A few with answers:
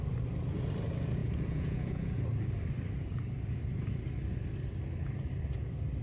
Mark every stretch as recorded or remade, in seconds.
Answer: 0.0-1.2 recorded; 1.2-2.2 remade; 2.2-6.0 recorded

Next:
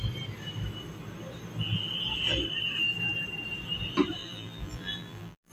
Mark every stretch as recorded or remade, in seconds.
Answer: 0.0-4.2 recorded; 4.2-5.5 remade

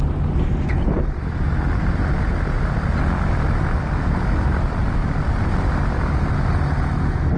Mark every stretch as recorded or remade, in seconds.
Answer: 0.0-5.0 recorded; 5.0-6.3 remade; 6.3-7.4 recorded

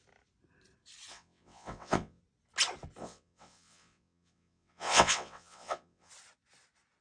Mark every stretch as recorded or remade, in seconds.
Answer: 0.0-1.1 recorded; 1.1-2.2 remade; 2.2-3.0 recorded; 3.0-6.1 remade; 6.1-7.0 recorded

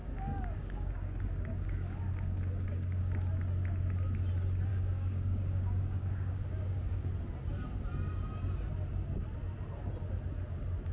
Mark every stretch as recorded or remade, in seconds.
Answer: 0.0-3.0 remade; 3.0-4.7 recorded; 4.7-7.1 remade; 7.1-10.9 recorded

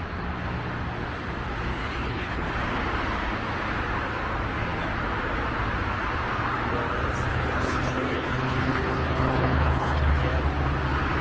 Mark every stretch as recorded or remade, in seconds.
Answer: 0.0-1.7 recorded; 1.7-2.5 remade; 2.5-7.3 recorded; 7.3-10.2 remade; 10.2-11.2 recorded

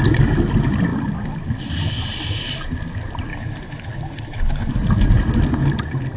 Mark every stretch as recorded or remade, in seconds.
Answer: 0.0-3.3 recorded; 3.3-4.7 remade; 4.7-6.2 recorded